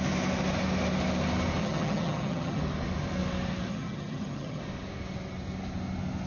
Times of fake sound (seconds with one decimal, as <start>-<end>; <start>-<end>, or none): 1.6-2.6; 3.7-4.6